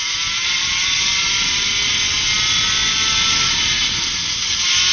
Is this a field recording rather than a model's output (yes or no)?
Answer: yes